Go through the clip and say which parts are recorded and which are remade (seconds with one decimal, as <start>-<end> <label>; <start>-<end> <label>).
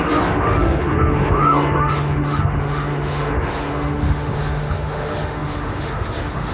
0.0-6.5 remade